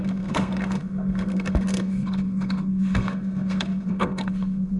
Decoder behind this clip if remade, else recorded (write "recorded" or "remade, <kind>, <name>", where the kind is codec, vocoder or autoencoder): remade, codec, SNAC